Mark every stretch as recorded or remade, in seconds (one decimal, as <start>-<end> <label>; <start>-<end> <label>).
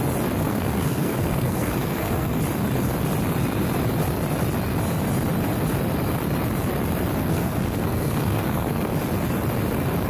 0.0-0.4 recorded; 0.4-2.4 remade; 2.4-7.2 recorded; 7.2-9.0 remade; 9.0-10.1 recorded